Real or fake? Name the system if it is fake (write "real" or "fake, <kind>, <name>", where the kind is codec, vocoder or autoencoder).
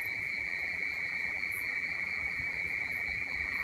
fake, vocoder, BigVGAN v2